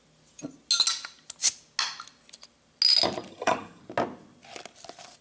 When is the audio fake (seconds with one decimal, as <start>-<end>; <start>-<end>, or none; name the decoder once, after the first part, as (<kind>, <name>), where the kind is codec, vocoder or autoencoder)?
3.3-3.8 (vocoder, HiFi-GAN)